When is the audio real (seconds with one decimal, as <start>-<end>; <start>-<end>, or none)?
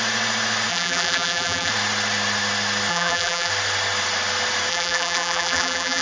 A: 0.0-0.7; 1.7-2.9; 3.5-4.7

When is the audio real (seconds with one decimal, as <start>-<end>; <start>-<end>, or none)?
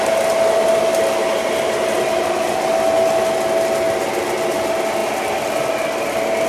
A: 0.0-6.5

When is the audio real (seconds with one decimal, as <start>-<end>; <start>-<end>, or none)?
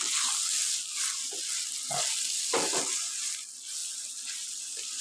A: 0.0-5.0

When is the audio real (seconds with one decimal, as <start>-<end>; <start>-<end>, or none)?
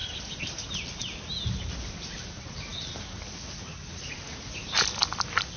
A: 0.0-5.6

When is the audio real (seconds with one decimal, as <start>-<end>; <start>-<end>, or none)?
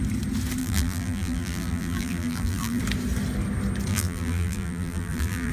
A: 0.0-0.6; 2.8-3.9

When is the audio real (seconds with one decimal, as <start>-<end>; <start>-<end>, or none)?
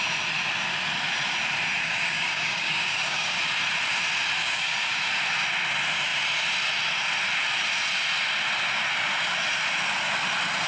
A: 0.0-1.8; 3.4-4.4; 5.0-10.7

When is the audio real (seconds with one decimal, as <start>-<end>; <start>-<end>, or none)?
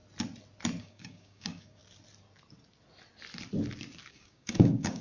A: 0.0-0.8; 1.8-4.1